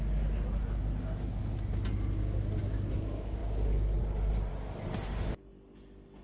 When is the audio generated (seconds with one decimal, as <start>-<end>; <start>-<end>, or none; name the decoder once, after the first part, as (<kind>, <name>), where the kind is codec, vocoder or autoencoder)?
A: none